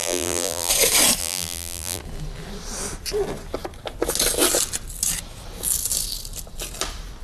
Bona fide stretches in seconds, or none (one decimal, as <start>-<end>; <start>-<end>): 0.7-1.2; 2.0-7.2

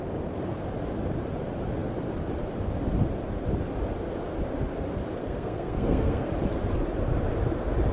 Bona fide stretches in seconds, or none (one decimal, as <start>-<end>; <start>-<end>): 0.0-5.2; 6.3-7.9

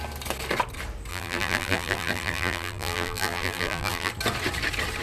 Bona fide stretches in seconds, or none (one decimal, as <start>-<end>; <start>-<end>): 0.0-1.1; 4.1-5.0

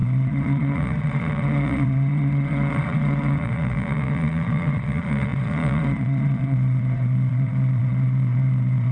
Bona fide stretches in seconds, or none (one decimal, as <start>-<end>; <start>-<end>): none